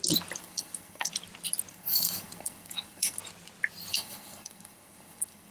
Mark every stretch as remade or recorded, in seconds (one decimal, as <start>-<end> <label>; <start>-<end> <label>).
0.0-0.4 recorded; 0.4-1.1 remade; 1.1-1.7 recorded; 1.7-3.2 remade; 3.2-3.9 recorded; 3.9-5.5 remade